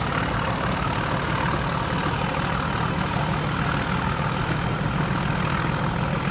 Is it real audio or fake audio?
real